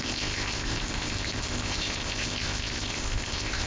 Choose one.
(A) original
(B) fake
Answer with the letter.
B